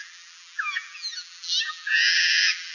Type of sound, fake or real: fake